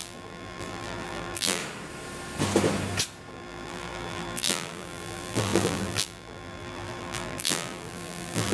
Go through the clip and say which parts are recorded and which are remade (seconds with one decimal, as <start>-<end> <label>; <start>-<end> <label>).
0.0-1.6 remade; 1.6-3.3 recorded; 3.3-8.5 remade